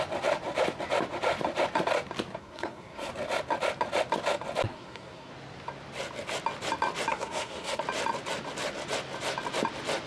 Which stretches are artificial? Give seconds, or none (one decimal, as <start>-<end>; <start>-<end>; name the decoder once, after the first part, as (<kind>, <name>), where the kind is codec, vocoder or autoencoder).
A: 2.4-3.1 (codec, SNAC); 4.7-5.3; 7.1-7.8